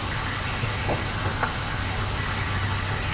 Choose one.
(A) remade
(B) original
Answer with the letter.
B